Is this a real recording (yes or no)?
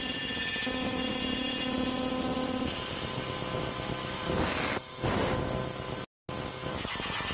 yes